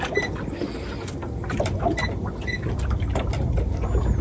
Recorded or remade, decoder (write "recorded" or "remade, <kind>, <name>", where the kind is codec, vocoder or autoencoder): recorded